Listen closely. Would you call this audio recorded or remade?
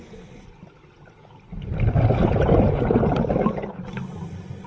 recorded